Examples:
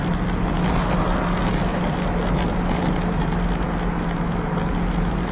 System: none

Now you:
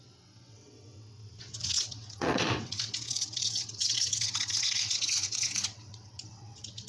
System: vocoder, WaveNeXt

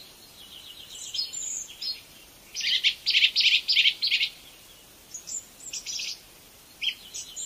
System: none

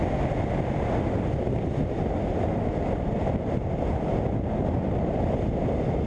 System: none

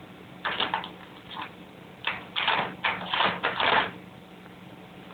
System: none